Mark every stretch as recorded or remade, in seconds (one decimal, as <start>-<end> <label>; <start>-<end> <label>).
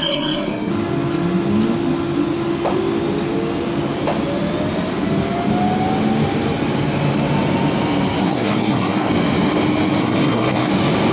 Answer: 0.0-0.7 remade; 0.7-8.2 recorded; 8.2-9.1 remade; 9.1-10.0 recorded; 10.0-10.7 remade; 10.7-11.1 recorded